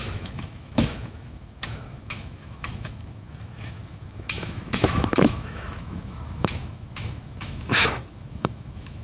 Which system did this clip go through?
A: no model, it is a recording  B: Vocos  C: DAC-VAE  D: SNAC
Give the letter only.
C